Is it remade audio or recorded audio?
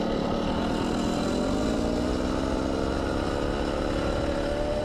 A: recorded